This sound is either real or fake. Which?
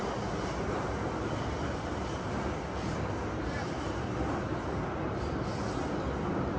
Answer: real